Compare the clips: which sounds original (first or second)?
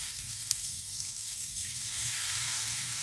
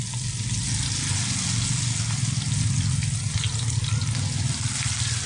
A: second